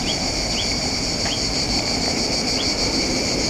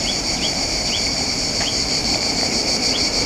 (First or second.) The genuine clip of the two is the first